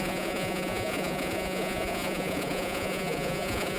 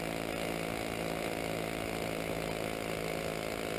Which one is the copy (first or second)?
first